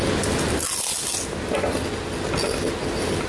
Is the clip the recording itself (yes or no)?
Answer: yes